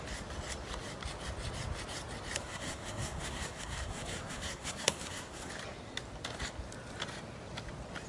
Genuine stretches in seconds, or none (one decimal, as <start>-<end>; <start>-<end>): 0.0-2.4; 5.5-8.1